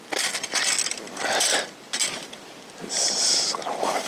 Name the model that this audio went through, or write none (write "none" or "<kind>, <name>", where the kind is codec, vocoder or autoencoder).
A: vocoder, BigVGAN v2